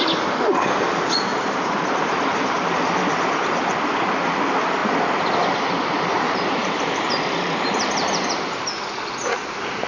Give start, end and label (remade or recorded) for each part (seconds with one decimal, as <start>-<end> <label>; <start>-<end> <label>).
0.0-1.3 recorded; 1.3-2.7 remade; 2.7-9.9 recorded